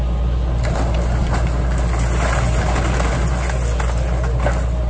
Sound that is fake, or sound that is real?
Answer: real